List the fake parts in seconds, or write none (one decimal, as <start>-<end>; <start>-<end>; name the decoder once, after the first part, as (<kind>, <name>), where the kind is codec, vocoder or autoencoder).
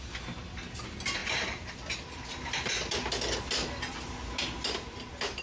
none